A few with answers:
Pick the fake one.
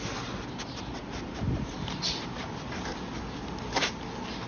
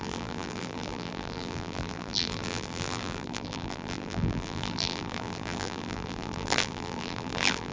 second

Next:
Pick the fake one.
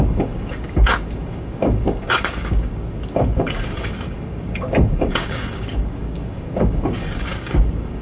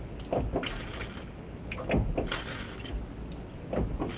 first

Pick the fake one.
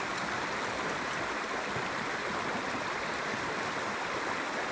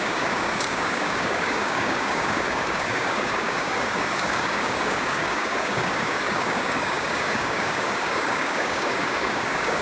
second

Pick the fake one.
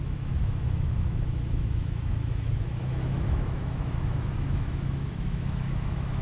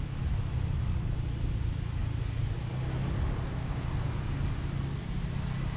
first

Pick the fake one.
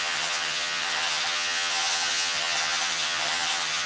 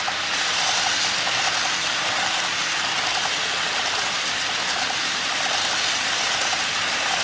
first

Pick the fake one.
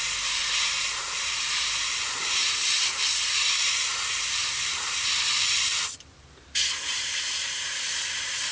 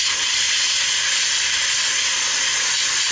first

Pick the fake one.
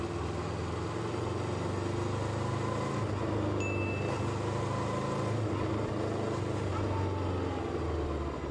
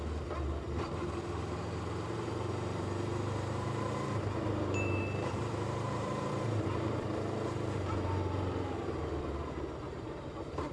second